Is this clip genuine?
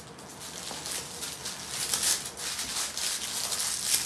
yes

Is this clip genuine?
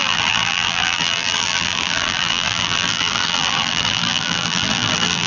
no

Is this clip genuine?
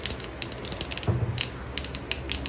yes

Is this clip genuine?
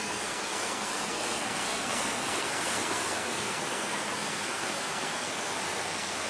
no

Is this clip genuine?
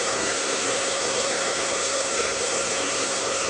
no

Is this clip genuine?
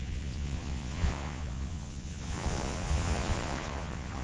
no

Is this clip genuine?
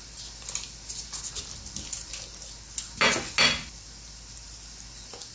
yes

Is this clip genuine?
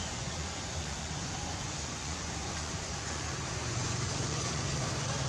no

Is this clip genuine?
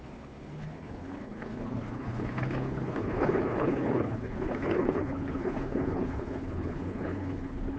no